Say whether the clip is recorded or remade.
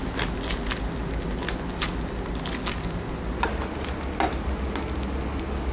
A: recorded